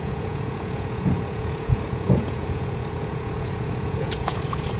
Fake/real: fake